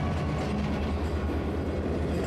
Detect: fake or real real